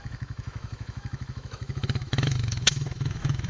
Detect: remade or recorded remade